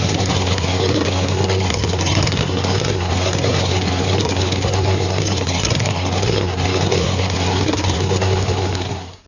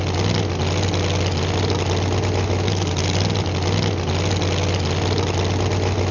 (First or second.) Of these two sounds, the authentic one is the second